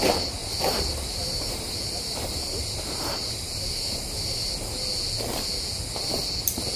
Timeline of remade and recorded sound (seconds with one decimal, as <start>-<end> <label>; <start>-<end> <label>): 0.0-0.4 recorded; 0.4-4.5 remade; 4.5-6.8 recorded